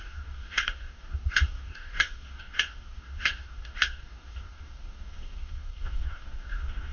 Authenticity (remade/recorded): remade